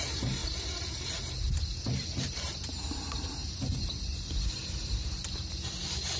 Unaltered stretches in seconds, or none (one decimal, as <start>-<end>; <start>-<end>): 0.0-2.0; 2.8-3.4; 4.3-5.0; 5.5-6.2